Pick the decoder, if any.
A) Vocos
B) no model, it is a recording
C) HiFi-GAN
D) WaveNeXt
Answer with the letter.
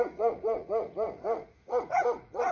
A